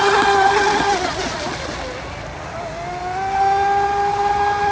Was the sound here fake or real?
real